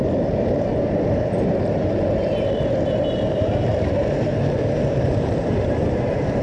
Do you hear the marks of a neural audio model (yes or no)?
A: yes